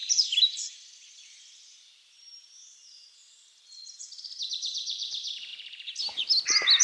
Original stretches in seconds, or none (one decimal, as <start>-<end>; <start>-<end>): 3.2-4.5; 5.5-6.8